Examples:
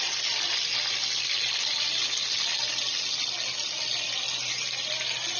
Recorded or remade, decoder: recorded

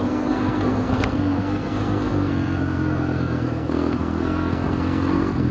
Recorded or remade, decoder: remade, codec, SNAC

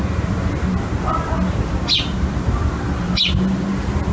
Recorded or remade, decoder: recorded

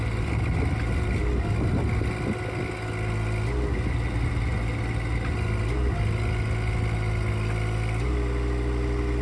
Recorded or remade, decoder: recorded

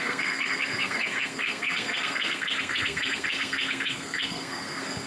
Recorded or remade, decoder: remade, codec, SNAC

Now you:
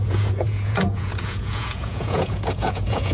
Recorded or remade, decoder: remade, vocoder, Vocos